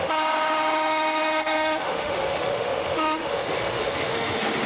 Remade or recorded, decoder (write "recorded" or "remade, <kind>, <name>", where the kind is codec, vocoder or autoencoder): remade, autoencoder, DAC-VAE